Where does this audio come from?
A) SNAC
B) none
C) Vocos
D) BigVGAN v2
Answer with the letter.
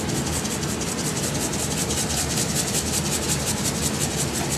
B